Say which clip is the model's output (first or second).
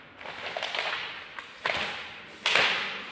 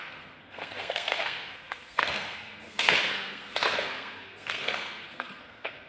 second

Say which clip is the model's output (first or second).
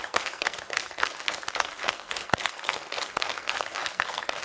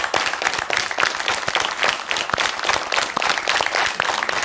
first